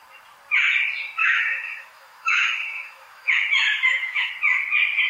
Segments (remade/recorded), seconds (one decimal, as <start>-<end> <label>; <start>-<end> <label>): 0.0-1.2 recorded; 1.2-4.3 remade; 4.3-5.1 recorded